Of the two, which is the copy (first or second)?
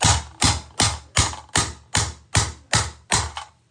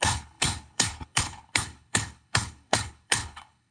second